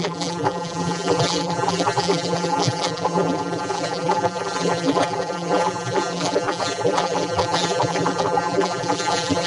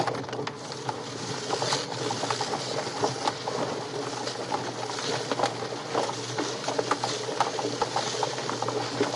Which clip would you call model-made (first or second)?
first